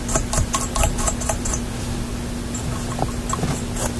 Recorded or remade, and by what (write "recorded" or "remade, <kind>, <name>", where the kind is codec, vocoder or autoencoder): recorded